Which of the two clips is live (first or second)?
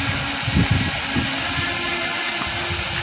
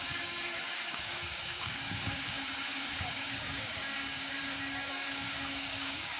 first